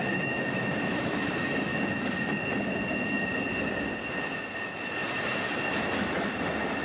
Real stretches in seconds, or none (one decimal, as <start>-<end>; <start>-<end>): 1.7-5.8